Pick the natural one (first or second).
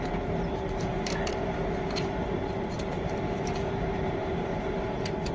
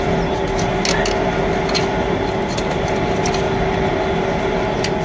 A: second